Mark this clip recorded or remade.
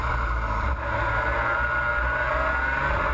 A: recorded